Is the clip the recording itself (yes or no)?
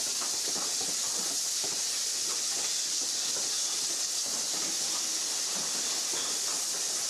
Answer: yes